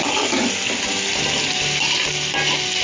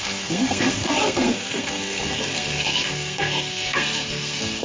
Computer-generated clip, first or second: second